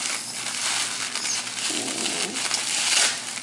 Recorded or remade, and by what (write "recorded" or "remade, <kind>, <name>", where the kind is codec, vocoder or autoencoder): recorded